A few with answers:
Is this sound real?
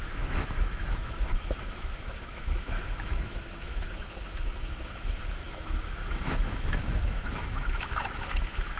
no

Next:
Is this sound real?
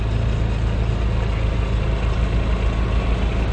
yes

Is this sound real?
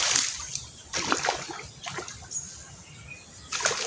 yes